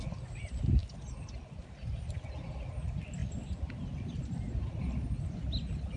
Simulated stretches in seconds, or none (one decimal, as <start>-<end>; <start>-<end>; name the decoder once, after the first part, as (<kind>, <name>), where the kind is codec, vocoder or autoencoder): none